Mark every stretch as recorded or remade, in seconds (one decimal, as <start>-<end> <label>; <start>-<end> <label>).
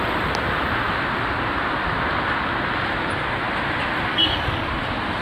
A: 0.0-4.1 recorded; 4.1-4.7 remade; 4.7-5.2 recorded